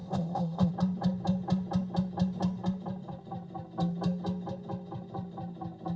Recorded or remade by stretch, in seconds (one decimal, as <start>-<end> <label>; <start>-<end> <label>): 0.0-0.7 remade; 0.7-6.0 recorded